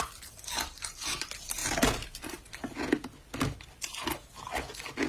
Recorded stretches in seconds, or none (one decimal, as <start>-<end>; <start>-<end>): 0.0-5.1